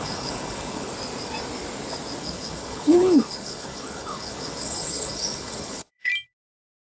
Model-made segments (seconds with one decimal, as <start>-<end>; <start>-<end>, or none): 0.0-0.9; 2.2-6.1